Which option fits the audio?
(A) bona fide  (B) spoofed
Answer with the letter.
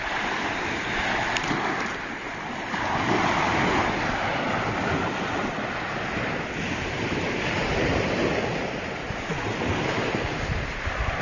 A